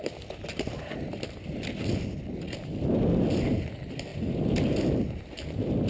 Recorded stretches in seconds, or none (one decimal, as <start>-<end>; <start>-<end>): 0.0-5.9